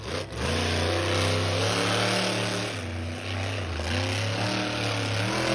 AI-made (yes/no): no